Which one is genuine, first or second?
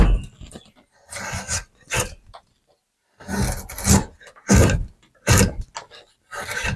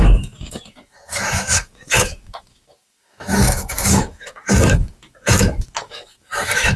first